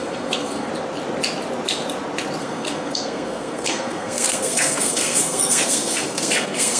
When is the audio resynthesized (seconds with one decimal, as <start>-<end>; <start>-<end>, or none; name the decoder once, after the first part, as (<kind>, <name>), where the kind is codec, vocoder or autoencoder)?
0.0-0.7 (codec, SNAC); 2.4-6.8